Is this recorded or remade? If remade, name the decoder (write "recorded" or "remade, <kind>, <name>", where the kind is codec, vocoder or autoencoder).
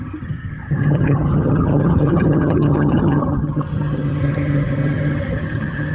remade, vocoder, HiFi-GAN